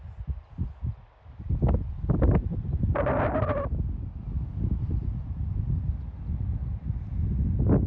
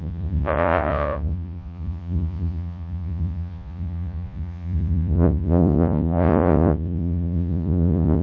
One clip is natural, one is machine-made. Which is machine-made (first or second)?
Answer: second